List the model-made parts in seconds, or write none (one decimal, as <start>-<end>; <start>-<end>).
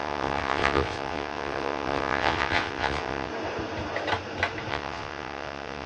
0.0-3.3; 4.7-5.9